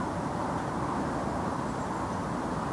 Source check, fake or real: real